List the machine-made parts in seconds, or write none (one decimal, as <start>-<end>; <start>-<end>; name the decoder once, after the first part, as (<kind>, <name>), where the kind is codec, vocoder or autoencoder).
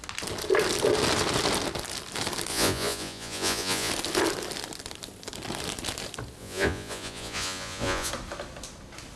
2.5-3.9 (vocoder, Vocos); 6.4-8.1